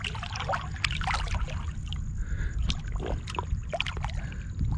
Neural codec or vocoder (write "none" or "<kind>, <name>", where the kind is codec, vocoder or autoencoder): none